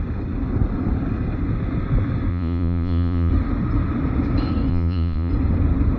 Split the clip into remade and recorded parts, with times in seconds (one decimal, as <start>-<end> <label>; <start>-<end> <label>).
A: 0.0-2.3 recorded; 2.3-3.3 remade; 3.3-4.7 recorded; 4.7-5.3 remade; 5.3-6.0 recorded